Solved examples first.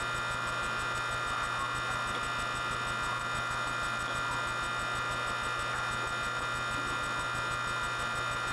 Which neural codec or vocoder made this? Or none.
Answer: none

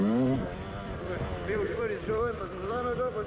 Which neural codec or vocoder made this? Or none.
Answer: vocoder, BigVGAN v2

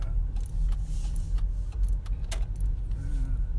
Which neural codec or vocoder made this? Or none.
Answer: none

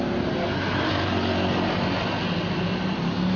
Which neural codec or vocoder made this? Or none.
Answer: none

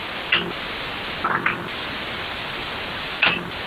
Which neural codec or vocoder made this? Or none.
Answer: none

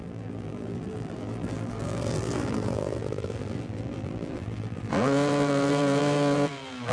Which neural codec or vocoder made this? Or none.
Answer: vocoder, BigVGAN v2